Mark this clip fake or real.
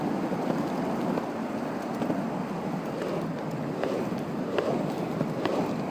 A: real